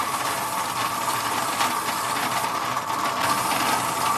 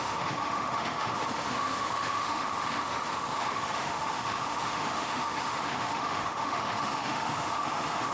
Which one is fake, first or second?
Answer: second